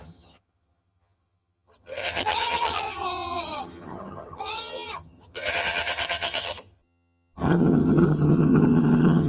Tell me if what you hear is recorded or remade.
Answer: remade